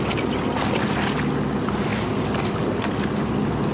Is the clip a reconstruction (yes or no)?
no